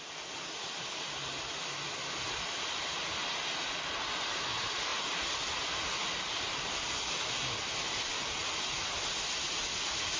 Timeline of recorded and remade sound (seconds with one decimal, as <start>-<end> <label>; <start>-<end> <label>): 0.0-10.2 recorded